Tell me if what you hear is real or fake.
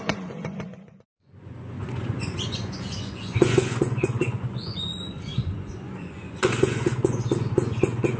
fake